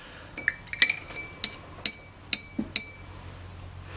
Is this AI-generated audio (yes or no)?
no